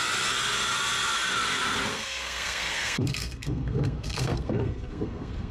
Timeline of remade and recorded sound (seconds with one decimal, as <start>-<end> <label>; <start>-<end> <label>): 0.0-1.9 recorded; 1.9-5.5 remade